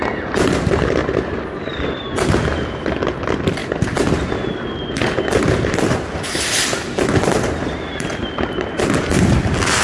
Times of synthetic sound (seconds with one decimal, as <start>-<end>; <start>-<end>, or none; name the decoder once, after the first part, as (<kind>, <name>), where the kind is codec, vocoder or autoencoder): 1.0-2.5 (vocoder, BigVGAN v2)